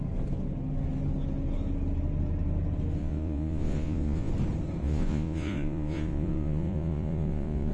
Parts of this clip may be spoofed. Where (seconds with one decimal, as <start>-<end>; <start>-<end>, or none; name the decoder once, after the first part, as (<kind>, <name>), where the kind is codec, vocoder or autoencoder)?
3.0-4.3 (vocoder, Vocos); 4.8-7.7